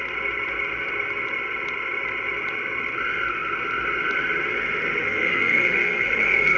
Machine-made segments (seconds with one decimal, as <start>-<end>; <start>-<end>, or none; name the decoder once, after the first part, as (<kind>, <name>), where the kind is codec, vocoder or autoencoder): 5.0-6.6 (codec, SNAC)